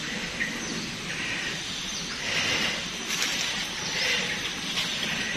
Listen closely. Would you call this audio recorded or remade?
recorded